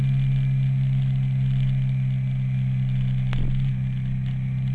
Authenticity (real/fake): real